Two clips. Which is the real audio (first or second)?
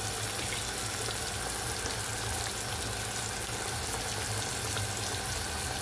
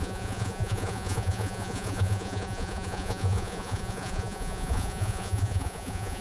first